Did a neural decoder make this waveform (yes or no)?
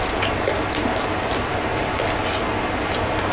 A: no